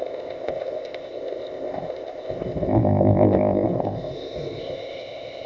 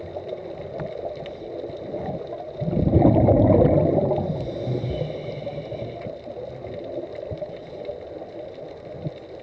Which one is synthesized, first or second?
first